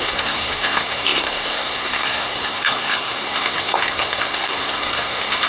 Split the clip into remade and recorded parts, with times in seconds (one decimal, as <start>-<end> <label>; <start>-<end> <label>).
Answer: 0.0-5.5 remade